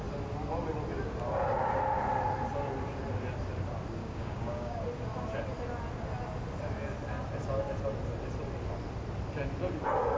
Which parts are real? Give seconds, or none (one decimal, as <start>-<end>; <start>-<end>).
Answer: 0.0-4.0; 4.8-10.2